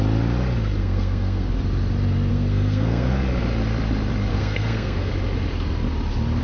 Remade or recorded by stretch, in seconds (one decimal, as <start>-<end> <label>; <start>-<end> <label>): 0.0-0.8 recorded; 0.8-1.5 remade; 1.5-2.3 recorded; 2.3-3.1 remade; 3.1-4.3 recorded; 4.3-5.1 remade; 5.1-6.4 recorded

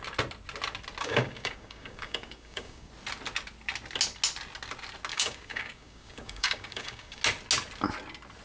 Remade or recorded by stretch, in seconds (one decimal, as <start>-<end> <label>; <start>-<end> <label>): 0.0-1.0 recorded; 1.0-2.9 remade; 2.9-5.1 recorded; 5.1-7.2 remade; 7.2-8.4 recorded

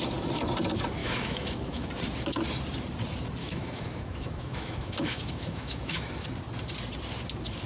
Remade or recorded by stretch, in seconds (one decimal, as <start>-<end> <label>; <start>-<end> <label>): 0.0-1.0 recorded; 1.0-1.9 remade; 1.9-3.4 recorded; 3.4-6.1 remade; 6.1-7.7 recorded

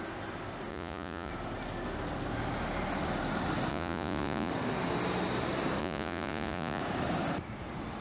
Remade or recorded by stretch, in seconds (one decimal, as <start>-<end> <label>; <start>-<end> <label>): 0.0-0.7 recorded; 0.7-1.3 remade; 1.3-3.7 recorded; 3.7-4.5 remade; 4.5-5.8 recorded; 5.8-6.8 remade; 6.8-8.0 recorded